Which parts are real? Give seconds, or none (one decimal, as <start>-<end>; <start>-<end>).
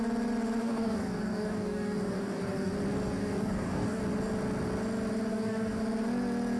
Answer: 0.0-0.6; 2.7-3.2; 4.0-5.3; 5.8-6.6